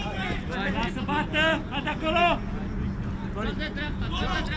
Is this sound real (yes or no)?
yes